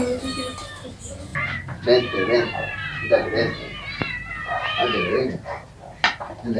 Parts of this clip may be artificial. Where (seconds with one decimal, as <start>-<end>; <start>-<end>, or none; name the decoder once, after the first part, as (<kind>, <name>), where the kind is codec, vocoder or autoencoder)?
1.3-5.3 (vocoder, BigVGAN v2)